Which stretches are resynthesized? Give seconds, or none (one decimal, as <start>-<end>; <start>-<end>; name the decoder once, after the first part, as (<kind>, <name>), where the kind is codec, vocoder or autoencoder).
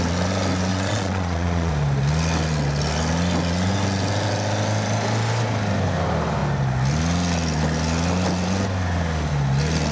0.7-1.7 (vocoder, Vocos)